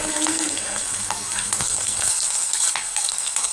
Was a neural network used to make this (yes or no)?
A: yes